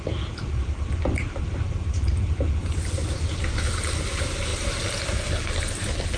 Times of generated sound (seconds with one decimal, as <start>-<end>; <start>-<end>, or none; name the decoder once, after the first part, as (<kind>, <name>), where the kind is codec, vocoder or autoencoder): none